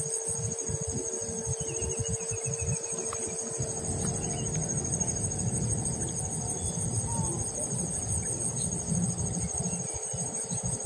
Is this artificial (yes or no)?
no